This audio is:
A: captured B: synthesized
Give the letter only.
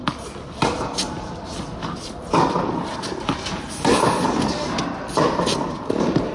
A